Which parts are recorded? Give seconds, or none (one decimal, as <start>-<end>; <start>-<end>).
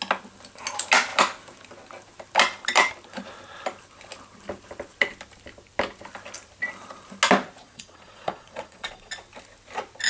0.0-7.6; 9.1-10.1